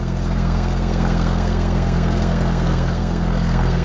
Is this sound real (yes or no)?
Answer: no